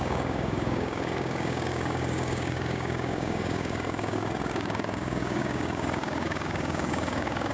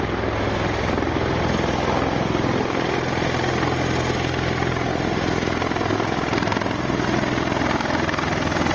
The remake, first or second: first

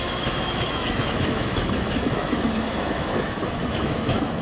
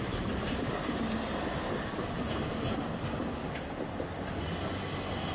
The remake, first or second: first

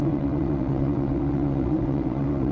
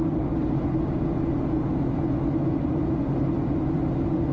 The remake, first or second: first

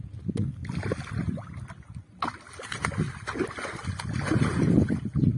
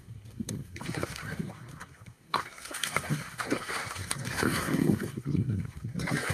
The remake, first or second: second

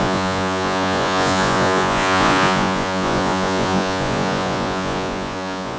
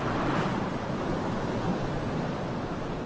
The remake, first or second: first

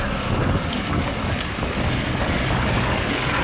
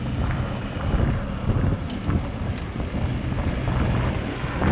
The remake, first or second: first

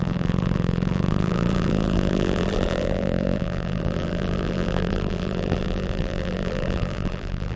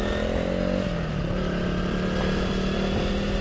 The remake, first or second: first